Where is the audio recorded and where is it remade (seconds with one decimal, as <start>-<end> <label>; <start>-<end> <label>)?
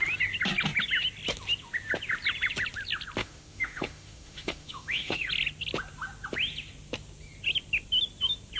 0.0-3.2 recorded; 3.2-5.3 remade; 5.3-8.6 recorded